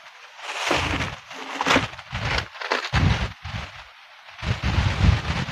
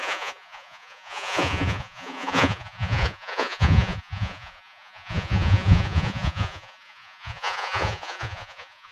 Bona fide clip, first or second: first